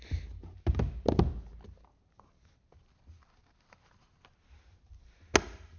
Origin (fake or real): real